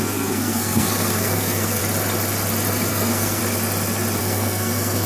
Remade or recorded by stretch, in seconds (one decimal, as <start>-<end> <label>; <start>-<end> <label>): 0.0-1.8 remade; 1.8-2.9 recorded; 2.9-3.4 remade; 3.4-4.2 recorded; 4.2-5.1 remade